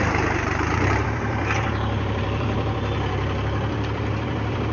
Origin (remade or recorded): remade